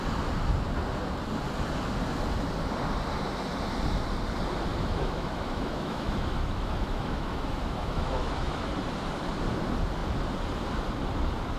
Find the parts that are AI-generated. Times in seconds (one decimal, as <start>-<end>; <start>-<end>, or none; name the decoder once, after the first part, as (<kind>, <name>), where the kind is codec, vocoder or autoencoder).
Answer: 4.7-8.7 (autoencoder, DAC-VAE)